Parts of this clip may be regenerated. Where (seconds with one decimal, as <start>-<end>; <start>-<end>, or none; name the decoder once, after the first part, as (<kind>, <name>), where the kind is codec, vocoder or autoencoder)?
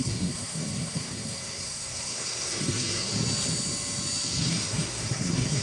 0.0-3.1 (codec, SNAC); 4.4-5.6